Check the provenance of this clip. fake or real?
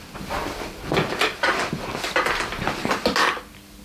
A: real